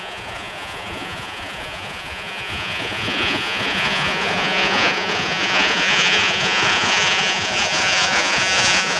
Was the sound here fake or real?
fake